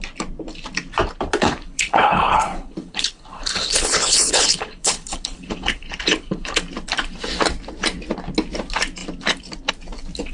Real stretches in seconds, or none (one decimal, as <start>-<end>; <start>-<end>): 0.0-1.4; 6.6-10.3